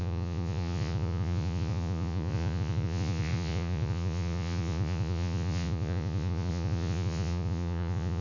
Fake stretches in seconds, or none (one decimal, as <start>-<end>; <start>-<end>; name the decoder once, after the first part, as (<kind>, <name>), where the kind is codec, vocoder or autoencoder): 0.0-8.2 (vocoder, Vocos)